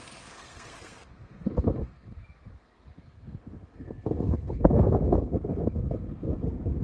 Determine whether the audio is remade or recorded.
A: remade